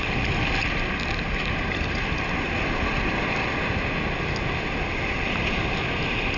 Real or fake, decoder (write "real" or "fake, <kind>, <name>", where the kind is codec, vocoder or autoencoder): real